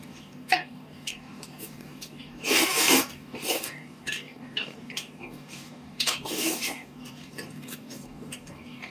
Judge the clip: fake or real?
fake